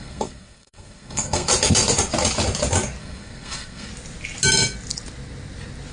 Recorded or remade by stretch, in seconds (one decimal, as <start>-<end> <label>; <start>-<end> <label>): 0.0-1.5 remade; 1.5-3.0 recorded; 3.0-3.9 remade; 3.9-5.9 recorded